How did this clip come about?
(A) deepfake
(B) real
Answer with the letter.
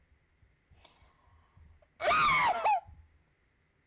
B